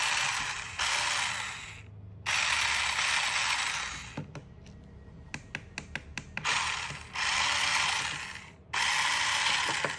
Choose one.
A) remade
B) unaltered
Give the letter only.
B